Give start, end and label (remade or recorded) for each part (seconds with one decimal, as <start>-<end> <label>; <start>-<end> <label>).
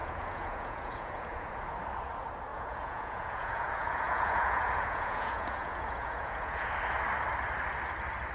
0.0-1.5 remade; 1.5-2.5 recorded; 2.5-6.7 remade; 6.7-8.3 recorded